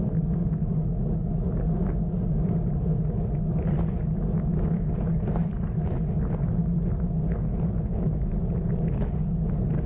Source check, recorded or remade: recorded